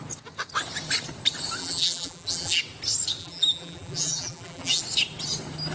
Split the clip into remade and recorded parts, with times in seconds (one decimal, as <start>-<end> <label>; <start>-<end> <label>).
0.0-1.6 recorded; 1.6-2.6 remade; 2.6-3.2 recorded; 3.2-4.8 remade; 4.8-5.7 recorded